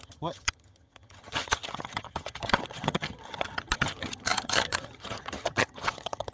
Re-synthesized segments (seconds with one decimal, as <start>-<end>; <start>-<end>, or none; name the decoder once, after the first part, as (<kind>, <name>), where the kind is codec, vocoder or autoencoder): 0.0-6.3 (vocoder, HiFi-GAN)